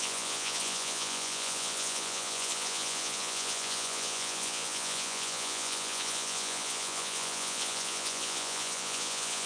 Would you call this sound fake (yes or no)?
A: yes